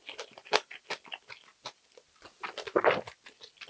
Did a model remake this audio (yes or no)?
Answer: no